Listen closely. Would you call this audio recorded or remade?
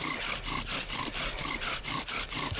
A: recorded